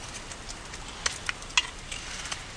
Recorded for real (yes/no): yes